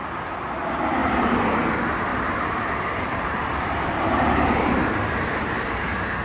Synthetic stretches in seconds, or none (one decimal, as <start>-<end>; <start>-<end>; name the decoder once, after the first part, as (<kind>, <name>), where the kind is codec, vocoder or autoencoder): 1.0-1.7 (vocoder, BigVGAN v2); 2.1-4.9